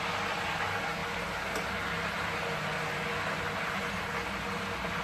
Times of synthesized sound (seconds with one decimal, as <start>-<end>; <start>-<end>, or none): none